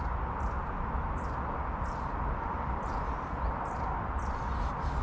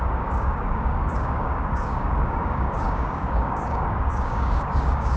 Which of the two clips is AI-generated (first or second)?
second